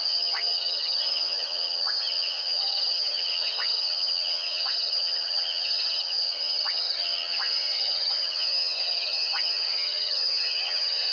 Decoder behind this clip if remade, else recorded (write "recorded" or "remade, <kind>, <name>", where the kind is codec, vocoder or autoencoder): remade, vocoder, HiFi-GAN